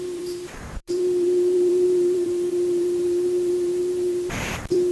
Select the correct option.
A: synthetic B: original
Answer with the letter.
A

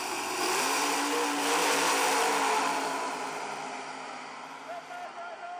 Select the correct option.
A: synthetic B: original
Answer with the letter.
B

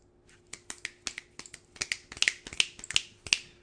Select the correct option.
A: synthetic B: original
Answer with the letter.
B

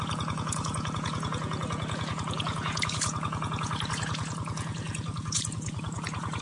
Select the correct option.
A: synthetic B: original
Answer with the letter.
A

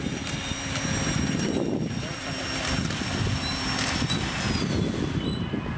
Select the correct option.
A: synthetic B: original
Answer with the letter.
B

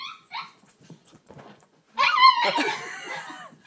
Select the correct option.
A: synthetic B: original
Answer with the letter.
A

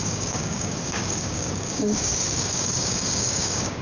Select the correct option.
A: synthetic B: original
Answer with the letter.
A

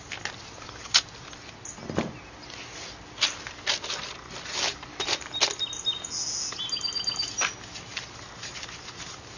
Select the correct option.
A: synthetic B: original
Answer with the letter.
B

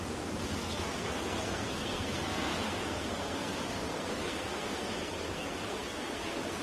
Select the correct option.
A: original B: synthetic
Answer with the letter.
B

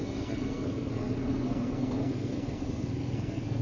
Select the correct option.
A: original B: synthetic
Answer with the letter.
B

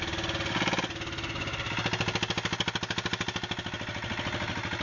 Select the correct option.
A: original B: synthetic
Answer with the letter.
A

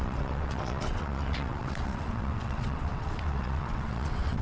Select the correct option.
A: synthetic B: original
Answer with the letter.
A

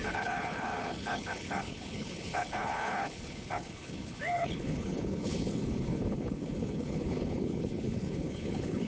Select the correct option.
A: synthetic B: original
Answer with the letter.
A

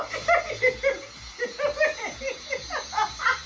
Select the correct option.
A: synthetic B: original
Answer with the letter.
B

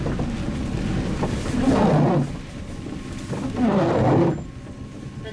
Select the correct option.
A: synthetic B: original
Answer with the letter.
B